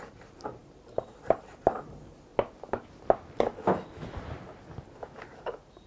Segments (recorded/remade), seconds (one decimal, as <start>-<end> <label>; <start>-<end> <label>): 0.0-2.3 remade; 2.3-5.2 recorded; 5.2-5.9 remade